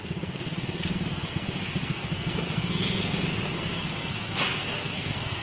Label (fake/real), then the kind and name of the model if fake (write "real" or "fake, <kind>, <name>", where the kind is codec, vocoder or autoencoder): fake, codec, SNAC